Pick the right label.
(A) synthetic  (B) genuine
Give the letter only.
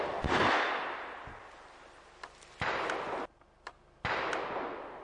B